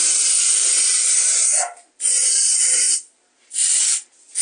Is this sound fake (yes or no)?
no